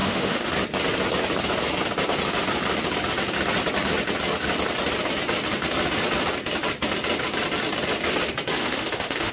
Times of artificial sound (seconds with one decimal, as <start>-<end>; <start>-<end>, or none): 0.0-0.5; 8.6-9.3